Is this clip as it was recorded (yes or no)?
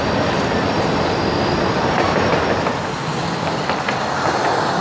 yes